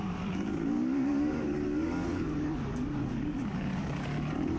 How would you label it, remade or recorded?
remade